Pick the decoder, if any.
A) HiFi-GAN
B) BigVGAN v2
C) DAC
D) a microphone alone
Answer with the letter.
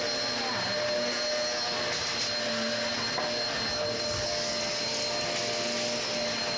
D